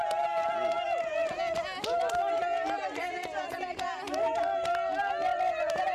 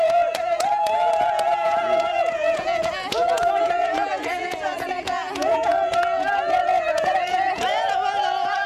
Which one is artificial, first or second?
second